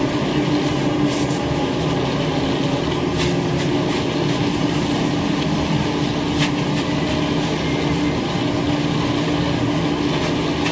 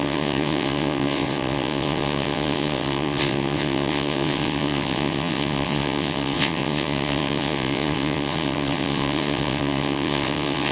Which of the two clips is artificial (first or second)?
second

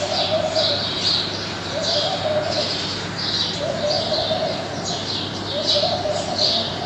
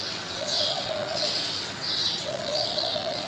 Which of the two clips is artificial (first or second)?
second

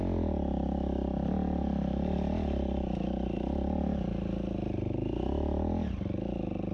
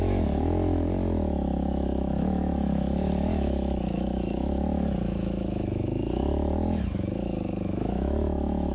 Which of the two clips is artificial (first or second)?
second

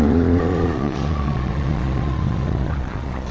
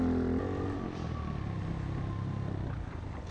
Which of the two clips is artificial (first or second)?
first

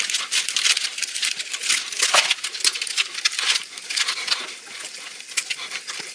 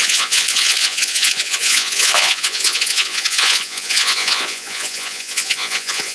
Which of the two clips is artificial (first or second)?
second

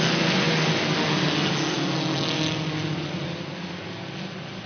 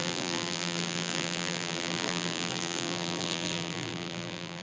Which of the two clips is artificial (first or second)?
second